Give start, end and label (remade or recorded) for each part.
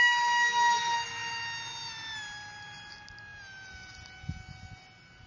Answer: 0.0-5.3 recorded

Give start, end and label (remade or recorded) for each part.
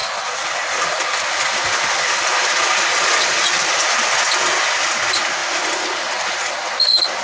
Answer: 0.0-3.9 remade; 3.9-5.4 recorded; 5.4-6.3 remade; 6.3-7.2 recorded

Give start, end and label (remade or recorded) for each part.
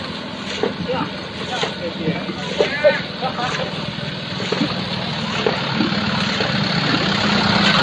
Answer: 0.0-7.8 recorded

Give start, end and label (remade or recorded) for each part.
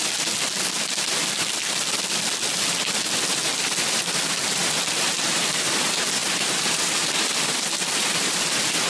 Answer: 0.0-8.9 recorded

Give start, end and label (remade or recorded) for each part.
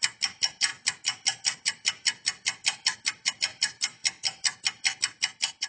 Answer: 0.0-5.7 recorded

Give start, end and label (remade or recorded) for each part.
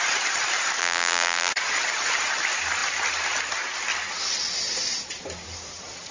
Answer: 0.0-0.8 recorded; 0.8-1.5 remade; 1.5-6.1 recorded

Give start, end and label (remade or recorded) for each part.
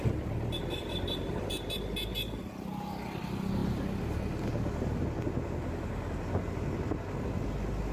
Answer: 0.0-0.6 recorded; 0.6-1.5 remade; 1.5-7.9 recorded